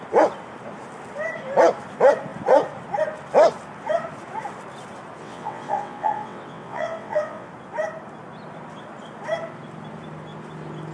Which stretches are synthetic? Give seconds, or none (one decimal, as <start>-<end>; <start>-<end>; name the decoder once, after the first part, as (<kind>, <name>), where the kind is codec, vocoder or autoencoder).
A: 5.2-7.5 (vocoder, WaveNeXt)